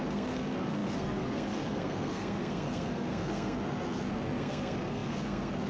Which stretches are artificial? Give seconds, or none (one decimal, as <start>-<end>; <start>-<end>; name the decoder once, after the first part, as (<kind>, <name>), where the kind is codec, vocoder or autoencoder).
0.0-5.7 (codec, SNAC)